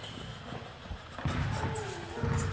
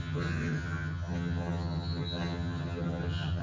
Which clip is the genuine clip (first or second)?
first